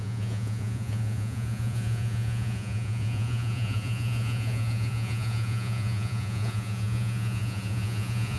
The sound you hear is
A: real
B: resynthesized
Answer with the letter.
B